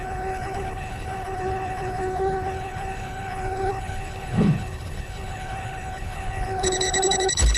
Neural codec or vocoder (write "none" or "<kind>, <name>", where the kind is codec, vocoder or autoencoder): codec, HILCodec